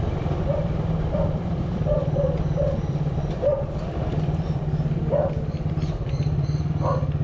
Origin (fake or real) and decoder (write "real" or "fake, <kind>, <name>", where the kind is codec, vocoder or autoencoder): fake, vocoder, BigVGAN v2